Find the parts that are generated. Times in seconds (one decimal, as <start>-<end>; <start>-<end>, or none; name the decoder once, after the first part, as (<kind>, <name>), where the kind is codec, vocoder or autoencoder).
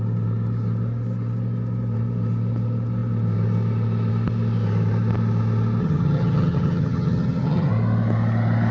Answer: 5.8-7.7 (vocoder, HiFi-GAN)